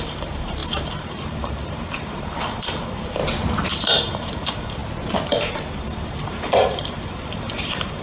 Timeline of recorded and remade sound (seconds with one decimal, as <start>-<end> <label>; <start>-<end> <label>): 0.0-3.2 remade; 3.2-3.7 recorded; 3.7-4.8 remade; 4.8-5.3 recorded; 5.3-8.0 remade